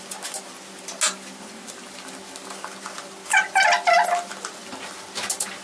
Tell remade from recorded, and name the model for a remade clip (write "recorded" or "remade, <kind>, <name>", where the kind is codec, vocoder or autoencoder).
recorded